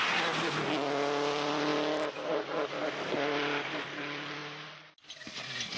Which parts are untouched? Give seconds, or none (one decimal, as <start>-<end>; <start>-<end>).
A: 0.0-5.8